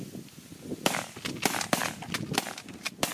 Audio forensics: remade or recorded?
recorded